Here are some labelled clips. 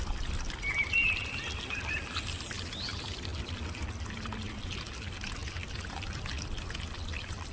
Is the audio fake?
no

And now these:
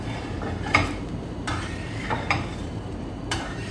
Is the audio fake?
yes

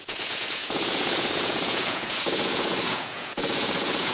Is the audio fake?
yes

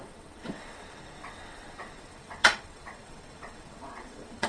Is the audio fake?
yes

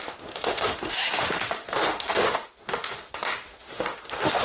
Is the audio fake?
yes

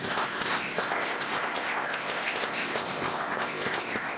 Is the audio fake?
yes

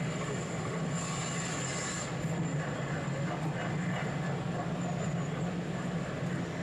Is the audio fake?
no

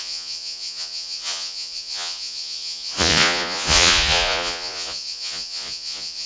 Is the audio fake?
yes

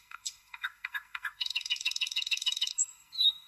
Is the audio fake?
yes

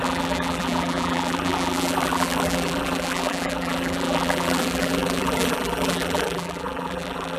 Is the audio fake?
yes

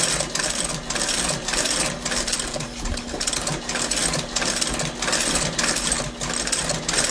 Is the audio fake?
no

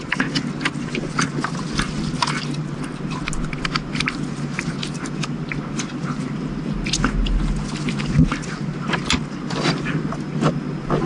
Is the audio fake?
no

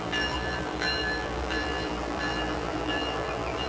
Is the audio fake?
yes